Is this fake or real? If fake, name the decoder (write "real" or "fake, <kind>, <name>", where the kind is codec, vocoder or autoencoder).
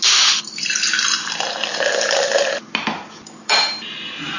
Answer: real